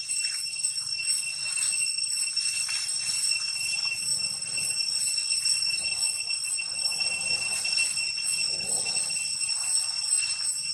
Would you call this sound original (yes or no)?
yes